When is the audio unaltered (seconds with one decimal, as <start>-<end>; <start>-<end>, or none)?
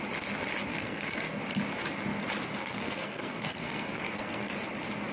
0.0-0.7; 1.4-2.6; 4.5-5.1